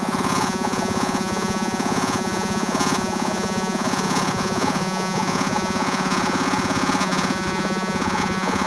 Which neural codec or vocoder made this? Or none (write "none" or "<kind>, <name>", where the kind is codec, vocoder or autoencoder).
vocoder, Vocos